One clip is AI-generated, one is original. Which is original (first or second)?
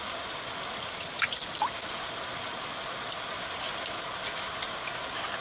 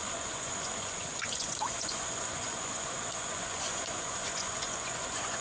first